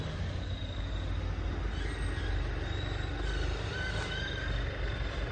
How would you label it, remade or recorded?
recorded